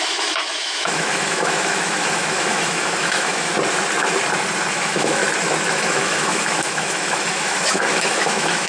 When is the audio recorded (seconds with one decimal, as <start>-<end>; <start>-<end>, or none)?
3.5-4.7; 5.2-5.7